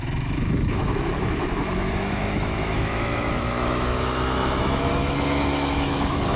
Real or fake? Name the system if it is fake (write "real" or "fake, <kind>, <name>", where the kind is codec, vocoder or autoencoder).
fake, autoencoder, DAC-VAE